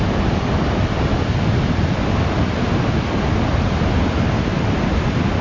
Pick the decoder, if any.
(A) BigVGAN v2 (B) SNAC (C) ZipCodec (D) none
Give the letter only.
D